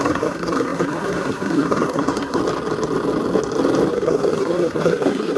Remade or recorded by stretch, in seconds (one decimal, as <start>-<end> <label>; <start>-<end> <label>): 0.0-2.4 remade; 2.4-3.9 recorded; 3.9-5.4 remade